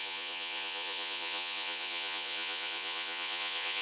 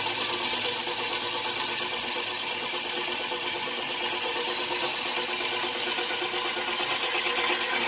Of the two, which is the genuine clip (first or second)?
second